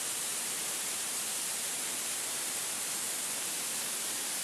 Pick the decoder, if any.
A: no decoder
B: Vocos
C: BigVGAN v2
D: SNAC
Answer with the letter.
C